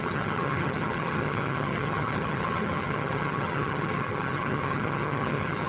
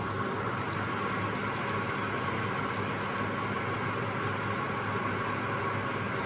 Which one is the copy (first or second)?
first